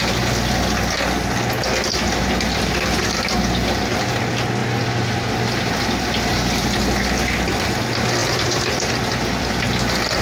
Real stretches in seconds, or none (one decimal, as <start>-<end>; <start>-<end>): 0.0-6.3; 6.8-8.2; 8.9-10.2